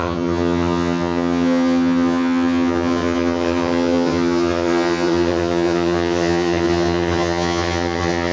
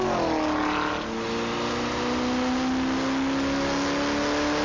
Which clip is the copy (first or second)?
first